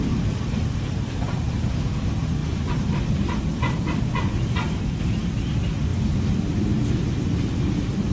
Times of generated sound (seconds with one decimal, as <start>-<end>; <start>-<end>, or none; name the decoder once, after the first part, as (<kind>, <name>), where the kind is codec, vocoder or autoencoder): 0.0-8.1 (vocoder, BigVGAN v2)